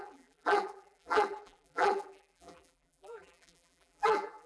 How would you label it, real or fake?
fake